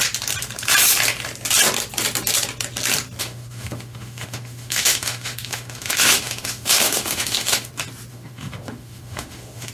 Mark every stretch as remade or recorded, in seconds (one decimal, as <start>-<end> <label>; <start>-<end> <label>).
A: 0.0-3.2 recorded; 3.2-7.7 remade; 7.7-8.1 recorded; 8.1-9.7 remade